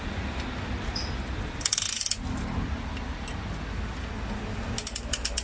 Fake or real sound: real